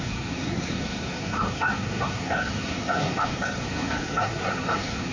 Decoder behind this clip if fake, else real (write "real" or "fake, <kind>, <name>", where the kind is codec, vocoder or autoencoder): fake, codec, SNAC